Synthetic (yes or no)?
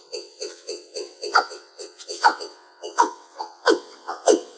yes